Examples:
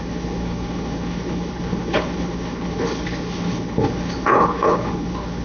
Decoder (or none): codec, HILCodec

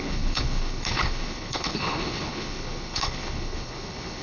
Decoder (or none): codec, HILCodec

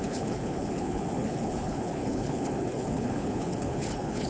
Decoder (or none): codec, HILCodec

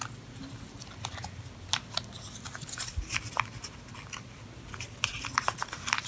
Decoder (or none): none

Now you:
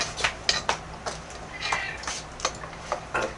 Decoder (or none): none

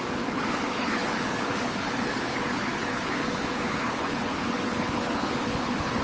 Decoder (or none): codec, HILCodec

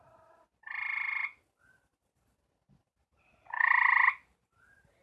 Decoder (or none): none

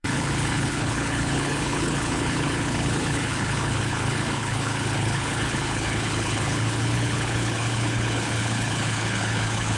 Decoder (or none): codec, HILCodec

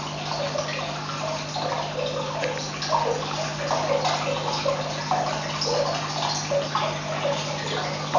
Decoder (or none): none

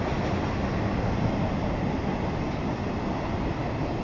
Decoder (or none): none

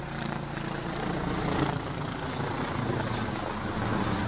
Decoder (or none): none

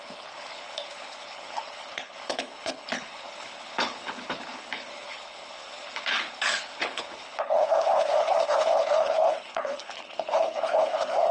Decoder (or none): codec, HILCodec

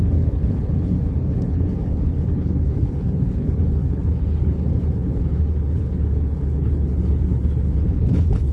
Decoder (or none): codec, HILCodec